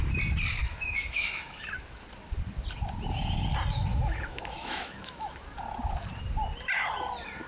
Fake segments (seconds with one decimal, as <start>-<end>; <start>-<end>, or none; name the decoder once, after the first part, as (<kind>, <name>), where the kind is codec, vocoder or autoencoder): 0.6-2.0 (autoencoder, DAC-VAE); 3.9-5.4

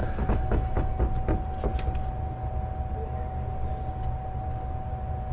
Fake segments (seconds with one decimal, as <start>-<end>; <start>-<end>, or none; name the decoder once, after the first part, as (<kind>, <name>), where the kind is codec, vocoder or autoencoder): 0.0-1.0 (autoencoder, DAC-VAE)

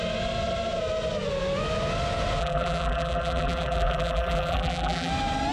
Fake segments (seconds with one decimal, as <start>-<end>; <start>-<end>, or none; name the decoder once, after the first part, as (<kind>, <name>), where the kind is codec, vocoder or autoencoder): 2.4-5.1 (vocoder, BigVGAN v2)

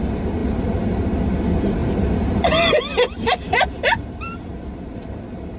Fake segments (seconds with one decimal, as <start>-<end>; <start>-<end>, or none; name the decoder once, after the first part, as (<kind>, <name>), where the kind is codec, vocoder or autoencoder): 1.8-5.6 (vocoder, BigVGAN v2)